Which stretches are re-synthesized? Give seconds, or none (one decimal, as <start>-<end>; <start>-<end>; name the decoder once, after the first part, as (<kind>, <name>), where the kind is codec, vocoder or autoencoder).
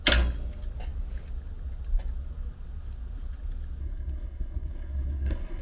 3.8-5.6 (codec, SNAC)